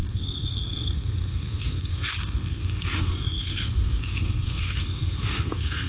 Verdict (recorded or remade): remade